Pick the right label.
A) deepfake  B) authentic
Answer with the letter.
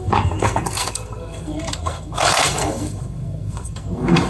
A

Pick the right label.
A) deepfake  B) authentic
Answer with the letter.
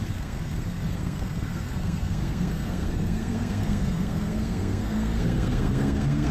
A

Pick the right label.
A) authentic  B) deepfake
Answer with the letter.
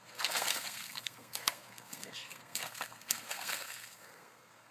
B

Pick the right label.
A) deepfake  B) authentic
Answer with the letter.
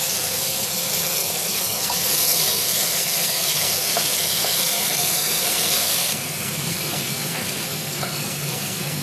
A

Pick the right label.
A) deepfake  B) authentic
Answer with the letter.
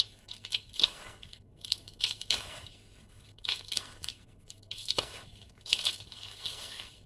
A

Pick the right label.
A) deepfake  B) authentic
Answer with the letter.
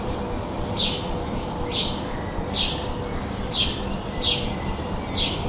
B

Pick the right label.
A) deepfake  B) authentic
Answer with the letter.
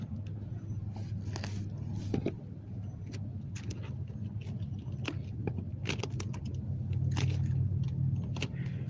B